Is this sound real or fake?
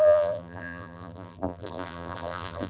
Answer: fake